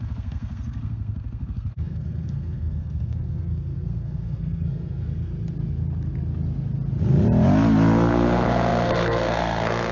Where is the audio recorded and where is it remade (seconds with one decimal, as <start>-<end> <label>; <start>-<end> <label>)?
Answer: 0.0-5.3 remade; 5.3-8.1 recorded; 8.1-9.9 remade